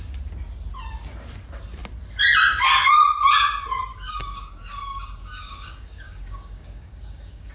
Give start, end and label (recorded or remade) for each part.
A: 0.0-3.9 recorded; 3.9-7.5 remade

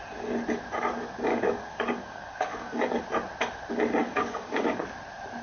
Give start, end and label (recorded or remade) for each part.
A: 0.0-1.3 recorded; 1.3-3.0 remade; 3.0-4.0 recorded; 4.0-4.8 remade; 4.8-5.4 recorded